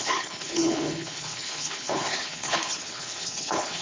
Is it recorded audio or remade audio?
remade